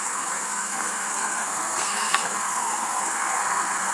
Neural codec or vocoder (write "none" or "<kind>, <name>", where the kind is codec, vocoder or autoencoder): codec, SNAC